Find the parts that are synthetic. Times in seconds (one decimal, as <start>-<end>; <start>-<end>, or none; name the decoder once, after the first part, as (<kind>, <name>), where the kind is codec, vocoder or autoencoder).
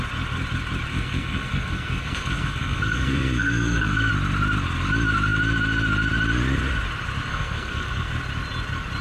0.9-4.1 (codec, SNAC); 7.3-8.1